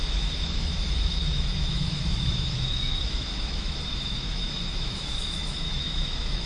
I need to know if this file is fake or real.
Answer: fake